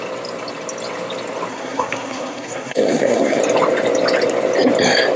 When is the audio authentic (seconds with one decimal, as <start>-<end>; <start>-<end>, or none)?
0.0-1.5; 3.4-5.2